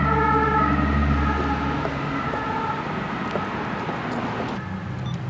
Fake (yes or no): no